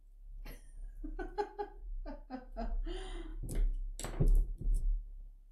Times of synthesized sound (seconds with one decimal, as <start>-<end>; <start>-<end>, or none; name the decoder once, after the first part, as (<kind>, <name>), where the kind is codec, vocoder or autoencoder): 1.8-2.8 (vocoder, Vocos)